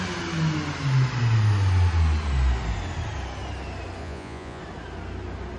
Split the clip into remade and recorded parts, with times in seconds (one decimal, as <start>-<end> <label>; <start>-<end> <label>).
0.0-4.0 recorded; 4.0-4.6 remade; 4.6-5.6 recorded